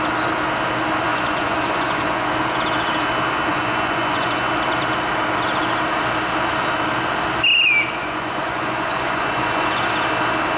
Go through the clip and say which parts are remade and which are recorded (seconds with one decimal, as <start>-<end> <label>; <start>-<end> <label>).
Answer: 0.0-1.1 recorded; 1.1-2.3 remade; 2.3-3.5 recorded; 3.5-4.5 remade; 4.5-8.0 recorded; 8.0-9.9 remade; 9.9-10.6 recorded